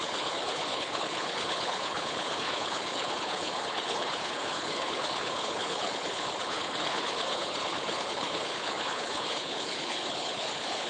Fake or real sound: fake